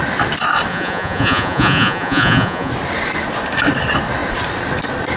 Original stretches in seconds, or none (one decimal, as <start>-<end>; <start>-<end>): 0.0-0.7; 2.7-5.2

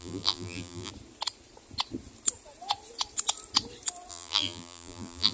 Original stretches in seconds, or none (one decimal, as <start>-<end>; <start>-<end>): 0.9-4.1

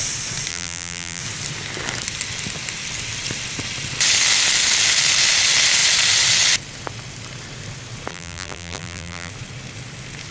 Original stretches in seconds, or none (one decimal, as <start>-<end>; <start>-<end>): 0.0-0.5; 1.2-8.1; 9.3-10.3

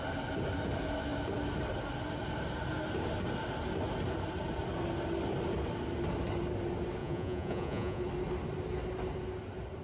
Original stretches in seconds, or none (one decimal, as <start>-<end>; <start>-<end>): 0.0-7.0; 8.0-9.8

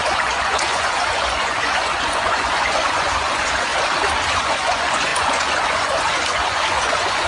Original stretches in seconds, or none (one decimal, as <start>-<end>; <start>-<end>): 3.7-4.3

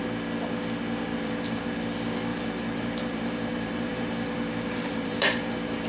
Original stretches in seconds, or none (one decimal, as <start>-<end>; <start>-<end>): 0.0-1.1; 1.6-2.3

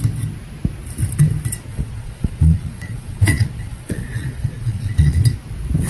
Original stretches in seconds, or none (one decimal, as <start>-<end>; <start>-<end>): 0.0-1.7; 5.2-5.9

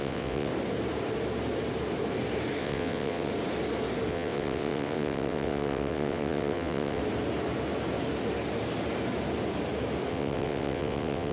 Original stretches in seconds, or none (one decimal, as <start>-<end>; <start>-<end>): 0.5-2.6; 3.3-4.1; 7.0-10.1